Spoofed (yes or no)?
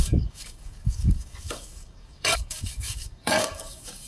yes